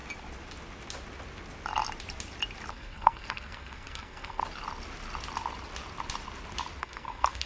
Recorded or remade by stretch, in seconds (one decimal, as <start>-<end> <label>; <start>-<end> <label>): 0.0-2.7 recorded; 2.7-4.4 remade; 4.4-6.8 recorded; 6.8-7.5 remade